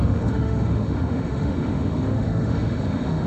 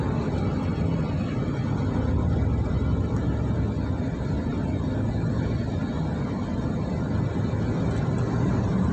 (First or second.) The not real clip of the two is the first